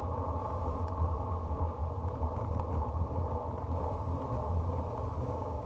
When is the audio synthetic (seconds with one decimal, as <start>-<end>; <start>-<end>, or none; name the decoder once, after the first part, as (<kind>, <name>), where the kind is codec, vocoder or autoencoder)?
1.3-1.8 (codec, DAC); 5.2-5.7